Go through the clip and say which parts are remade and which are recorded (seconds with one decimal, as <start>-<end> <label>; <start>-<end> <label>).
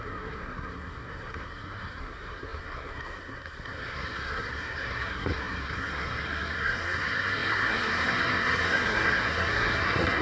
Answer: 0.0-10.2 remade